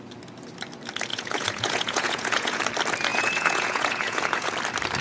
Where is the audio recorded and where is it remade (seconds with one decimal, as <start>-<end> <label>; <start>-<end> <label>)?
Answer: 0.0-1.1 recorded; 1.1-2.6 remade; 2.6-3.1 recorded; 3.1-4.5 remade; 4.5-5.0 recorded